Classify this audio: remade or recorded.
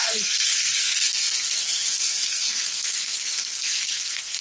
remade